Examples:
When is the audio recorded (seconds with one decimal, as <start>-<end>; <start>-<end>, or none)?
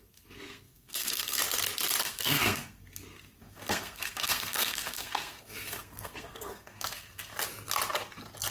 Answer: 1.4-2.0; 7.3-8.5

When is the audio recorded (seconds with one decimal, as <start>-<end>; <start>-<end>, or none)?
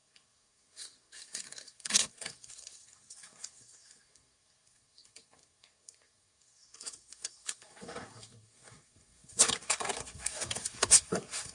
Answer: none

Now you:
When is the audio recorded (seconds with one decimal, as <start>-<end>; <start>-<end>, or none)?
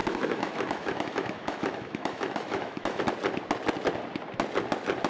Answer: 3.0-5.1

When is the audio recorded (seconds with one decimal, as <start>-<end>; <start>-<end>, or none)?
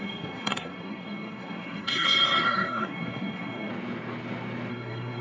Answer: 3.7-4.7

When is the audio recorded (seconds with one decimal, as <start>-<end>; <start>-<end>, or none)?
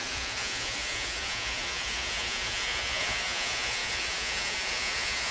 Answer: none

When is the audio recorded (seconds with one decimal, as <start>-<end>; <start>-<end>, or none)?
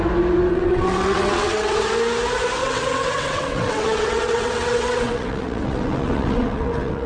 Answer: 0.0-0.5; 1.8-2.6